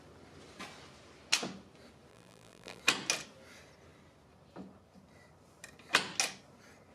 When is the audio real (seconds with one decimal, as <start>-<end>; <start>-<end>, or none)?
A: 0.0-2.1; 2.8-6.9